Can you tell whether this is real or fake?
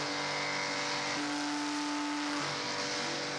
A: real